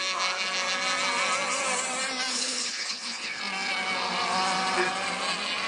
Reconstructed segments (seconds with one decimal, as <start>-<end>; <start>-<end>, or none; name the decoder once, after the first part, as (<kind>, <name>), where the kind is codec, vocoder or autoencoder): 2.3-3.4 (codec, HILCodec)